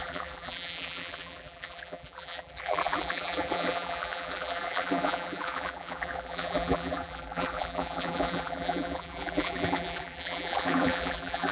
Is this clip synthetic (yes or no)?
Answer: yes